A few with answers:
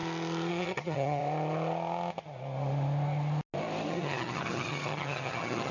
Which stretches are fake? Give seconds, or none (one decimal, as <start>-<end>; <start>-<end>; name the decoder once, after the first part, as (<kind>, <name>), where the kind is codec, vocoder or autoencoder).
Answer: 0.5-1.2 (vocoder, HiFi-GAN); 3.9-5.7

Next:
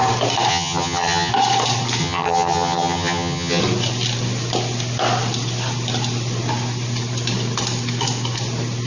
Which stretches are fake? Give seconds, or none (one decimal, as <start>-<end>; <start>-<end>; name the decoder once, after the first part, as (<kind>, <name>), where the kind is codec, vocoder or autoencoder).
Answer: 0.5-1.3 (vocoder, HiFi-GAN); 2.0-3.6

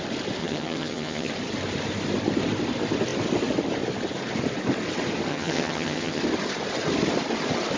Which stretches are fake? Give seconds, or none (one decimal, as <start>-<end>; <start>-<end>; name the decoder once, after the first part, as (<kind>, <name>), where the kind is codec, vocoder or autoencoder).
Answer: 0.4-1.3 (vocoder, HiFi-GAN); 5.3-6.2

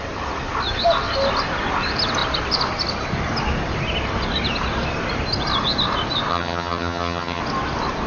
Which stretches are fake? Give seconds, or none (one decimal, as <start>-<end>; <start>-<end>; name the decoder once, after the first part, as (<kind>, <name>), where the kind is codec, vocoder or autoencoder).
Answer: 6.3-7.4 (vocoder, HiFi-GAN)

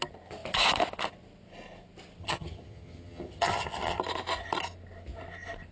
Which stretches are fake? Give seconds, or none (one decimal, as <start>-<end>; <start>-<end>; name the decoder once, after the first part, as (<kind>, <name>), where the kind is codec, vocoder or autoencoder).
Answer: 2.2-4.0 (vocoder, HiFi-GAN)